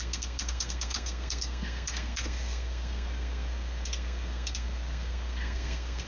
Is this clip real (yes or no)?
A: no